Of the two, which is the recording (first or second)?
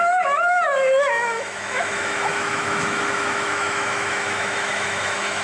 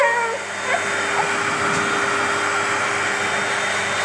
second